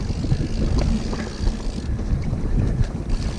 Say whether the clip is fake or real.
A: real